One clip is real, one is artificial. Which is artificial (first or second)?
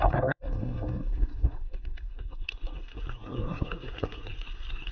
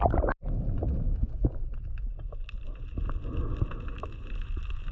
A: first